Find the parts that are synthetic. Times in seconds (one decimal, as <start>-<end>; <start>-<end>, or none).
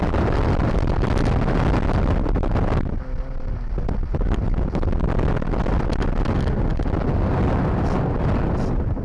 none